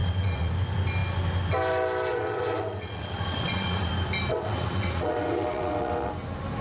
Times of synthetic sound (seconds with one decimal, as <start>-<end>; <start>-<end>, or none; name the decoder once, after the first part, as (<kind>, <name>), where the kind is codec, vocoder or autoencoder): 0.0-0.5 (vocoder, WaveNeXt); 2.1-3.9; 4.3-6.1